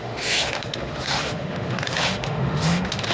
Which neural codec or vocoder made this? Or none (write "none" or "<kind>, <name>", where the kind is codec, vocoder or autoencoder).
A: autoencoder, DAC-VAE